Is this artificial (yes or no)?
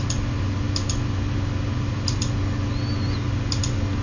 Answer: no